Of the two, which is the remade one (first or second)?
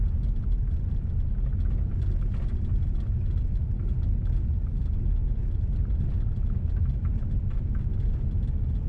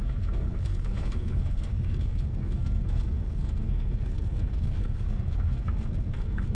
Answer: second